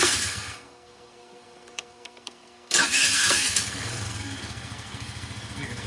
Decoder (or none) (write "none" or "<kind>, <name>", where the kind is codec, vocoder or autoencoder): codec, SNAC